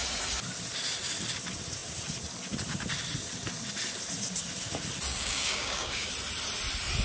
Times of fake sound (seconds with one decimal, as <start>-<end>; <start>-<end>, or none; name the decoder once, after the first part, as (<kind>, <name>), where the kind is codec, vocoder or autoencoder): 5.1-6.1 (codec, DAC)